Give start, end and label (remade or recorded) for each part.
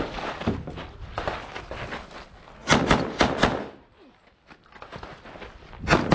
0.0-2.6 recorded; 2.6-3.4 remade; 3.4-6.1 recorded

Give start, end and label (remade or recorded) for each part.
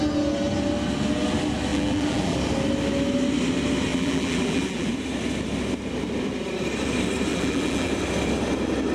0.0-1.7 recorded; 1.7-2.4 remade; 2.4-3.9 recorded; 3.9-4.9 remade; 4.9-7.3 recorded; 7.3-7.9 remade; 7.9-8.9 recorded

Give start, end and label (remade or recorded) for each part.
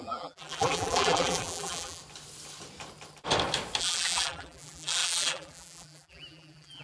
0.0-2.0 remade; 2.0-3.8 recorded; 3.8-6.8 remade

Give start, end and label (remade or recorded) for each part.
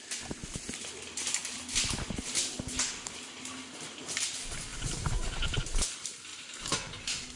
0.0-4.7 recorded; 4.7-5.3 remade; 5.3-6.3 recorded; 6.3-7.0 remade; 7.0-7.4 recorded